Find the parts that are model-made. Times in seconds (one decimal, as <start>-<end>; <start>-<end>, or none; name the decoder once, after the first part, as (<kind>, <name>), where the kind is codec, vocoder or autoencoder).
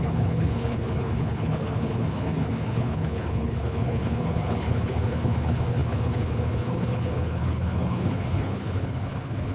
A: 0.0-9.5 (codec, HILCodec)